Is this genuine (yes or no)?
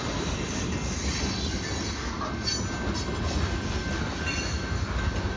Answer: yes